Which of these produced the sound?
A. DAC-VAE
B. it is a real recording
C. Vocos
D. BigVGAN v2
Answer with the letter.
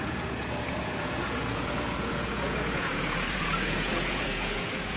C